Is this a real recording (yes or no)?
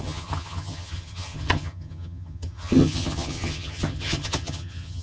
no